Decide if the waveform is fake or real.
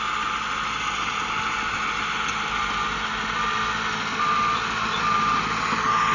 real